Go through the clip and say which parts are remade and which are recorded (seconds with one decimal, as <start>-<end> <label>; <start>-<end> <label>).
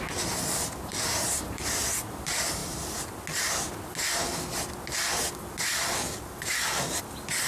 0.0-0.9 recorded; 0.9-1.6 remade; 1.6-7.5 recorded